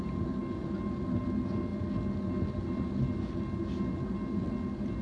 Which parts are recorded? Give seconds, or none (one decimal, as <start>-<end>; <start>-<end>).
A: 0.0-5.0